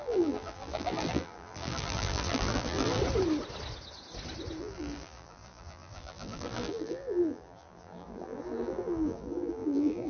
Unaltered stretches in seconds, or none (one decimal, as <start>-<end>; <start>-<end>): 3.0-4.6